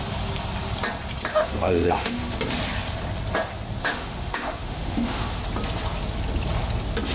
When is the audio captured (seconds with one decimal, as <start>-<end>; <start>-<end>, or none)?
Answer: 0.0-1.3; 2.4-3.8; 5.4-7.1